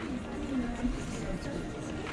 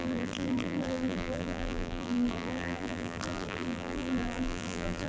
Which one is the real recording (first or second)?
first